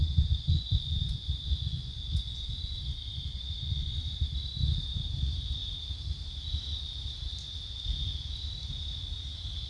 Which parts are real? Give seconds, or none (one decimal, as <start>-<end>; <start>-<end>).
4.0-9.7